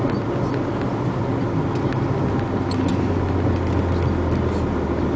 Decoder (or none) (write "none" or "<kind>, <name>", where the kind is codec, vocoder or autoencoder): none